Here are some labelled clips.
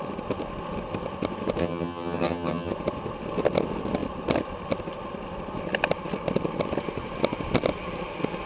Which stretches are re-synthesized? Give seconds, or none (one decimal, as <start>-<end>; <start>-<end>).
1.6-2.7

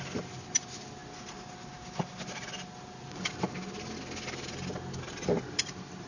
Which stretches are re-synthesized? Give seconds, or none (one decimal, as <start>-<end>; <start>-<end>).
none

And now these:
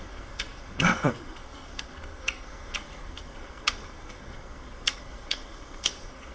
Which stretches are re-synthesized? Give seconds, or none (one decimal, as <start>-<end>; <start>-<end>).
0.0-6.3